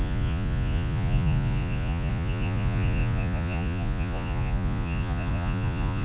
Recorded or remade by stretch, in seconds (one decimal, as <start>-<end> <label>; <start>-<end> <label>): 0.0-6.0 remade